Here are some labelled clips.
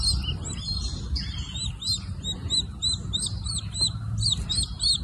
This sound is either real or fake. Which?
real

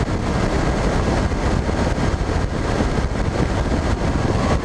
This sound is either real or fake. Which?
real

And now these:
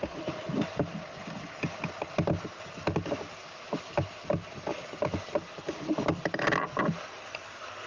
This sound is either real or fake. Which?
real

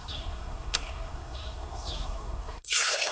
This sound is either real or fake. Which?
fake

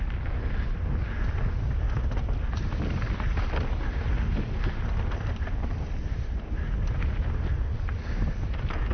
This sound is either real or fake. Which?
real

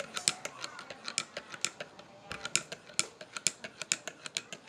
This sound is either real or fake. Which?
real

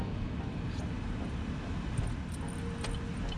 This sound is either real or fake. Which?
real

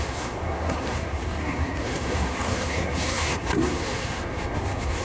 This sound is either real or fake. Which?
fake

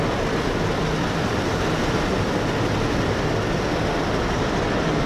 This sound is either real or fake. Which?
real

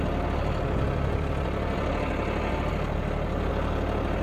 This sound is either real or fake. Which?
real